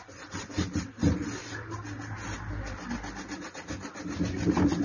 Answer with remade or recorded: recorded